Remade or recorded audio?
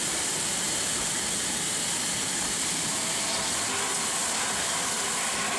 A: recorded